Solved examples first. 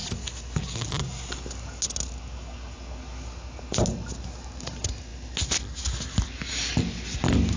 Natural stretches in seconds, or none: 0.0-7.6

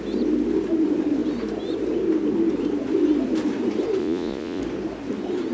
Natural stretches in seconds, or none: 0.0-4.0; 4.6-5.5